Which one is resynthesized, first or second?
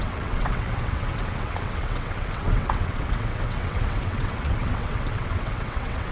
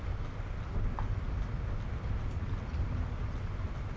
first